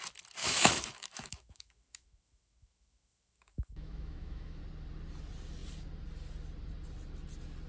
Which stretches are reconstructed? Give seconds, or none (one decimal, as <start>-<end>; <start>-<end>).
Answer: 0.4-4.6